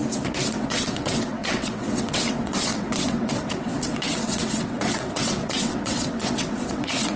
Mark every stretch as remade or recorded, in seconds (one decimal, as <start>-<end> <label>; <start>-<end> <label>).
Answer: 0.0-0.5 recorded; 0.5-7.2 remade